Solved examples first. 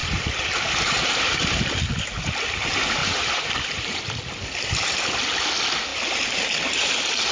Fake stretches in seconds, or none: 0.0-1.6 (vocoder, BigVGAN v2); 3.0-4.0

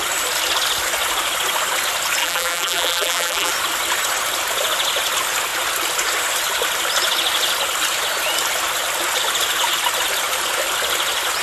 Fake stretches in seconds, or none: 2.2-3.5 (vocoder, BigVGAN v2)